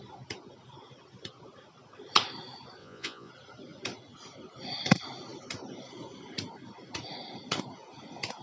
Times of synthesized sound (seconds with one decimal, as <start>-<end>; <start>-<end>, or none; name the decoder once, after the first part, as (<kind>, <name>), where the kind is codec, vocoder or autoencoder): 2.8-3.3 (vocoder, Vocos)